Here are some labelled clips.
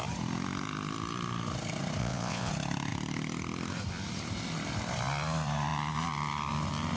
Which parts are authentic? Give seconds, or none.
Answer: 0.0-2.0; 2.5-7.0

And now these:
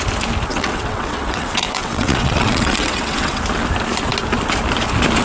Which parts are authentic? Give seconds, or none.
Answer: 0.0-0.5; 3.4-5.2

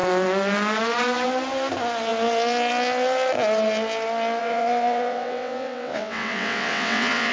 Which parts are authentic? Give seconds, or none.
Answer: 0.0-4.4

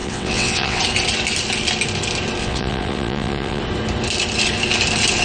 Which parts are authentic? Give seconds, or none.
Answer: 0.8-2.4; 3.6-5.2

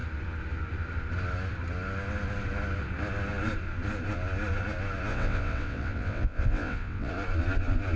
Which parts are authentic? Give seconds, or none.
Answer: 0.0-5.1; 7.1-8.0

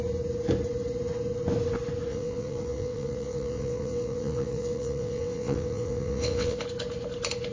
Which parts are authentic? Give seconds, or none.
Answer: 0.0-2.1; 6.6-7.5

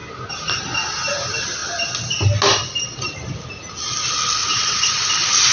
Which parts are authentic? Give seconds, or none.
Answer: 0.0-4.4; 4.9-5.5